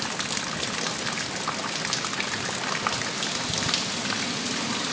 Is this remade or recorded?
recorded